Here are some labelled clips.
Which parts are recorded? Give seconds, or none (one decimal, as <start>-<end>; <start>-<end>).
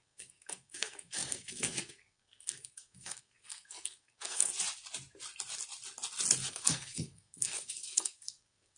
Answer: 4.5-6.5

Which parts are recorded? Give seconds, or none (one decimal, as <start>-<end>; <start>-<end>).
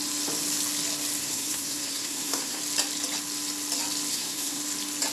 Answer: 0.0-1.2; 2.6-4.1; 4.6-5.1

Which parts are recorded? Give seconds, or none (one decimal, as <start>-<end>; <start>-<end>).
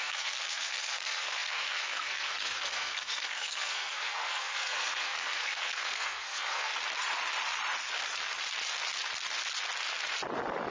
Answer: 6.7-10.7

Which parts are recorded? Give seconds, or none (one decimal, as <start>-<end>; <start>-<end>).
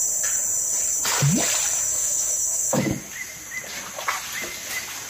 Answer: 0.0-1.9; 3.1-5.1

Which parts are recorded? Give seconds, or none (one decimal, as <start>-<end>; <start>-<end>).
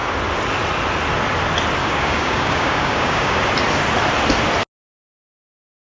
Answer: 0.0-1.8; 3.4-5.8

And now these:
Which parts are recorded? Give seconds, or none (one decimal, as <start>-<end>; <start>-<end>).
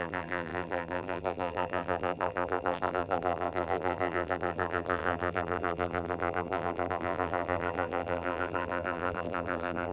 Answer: none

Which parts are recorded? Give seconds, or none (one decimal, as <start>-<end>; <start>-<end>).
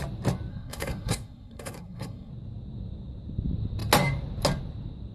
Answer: 0.0-0.5; 2.3-5.1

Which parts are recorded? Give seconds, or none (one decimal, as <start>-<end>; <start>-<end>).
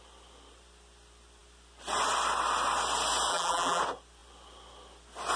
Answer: 0.0-3.3; 3.8-5.4